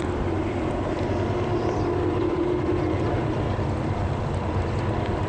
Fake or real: fake